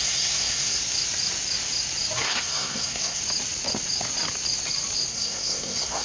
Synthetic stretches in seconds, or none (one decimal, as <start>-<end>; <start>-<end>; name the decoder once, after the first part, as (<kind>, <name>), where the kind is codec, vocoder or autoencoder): 0.0-0.8 (codec, SNAC); 2.2-3.2; 5.1-6.0